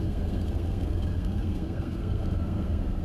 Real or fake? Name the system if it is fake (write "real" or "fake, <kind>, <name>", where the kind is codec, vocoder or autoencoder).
fake, codec, SNAC